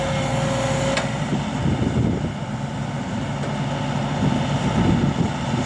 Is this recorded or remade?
recorded